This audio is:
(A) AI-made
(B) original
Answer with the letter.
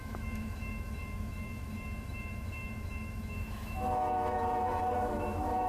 A